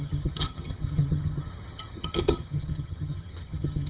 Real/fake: fake